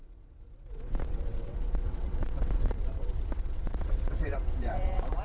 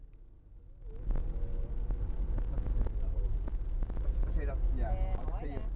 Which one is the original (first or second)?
second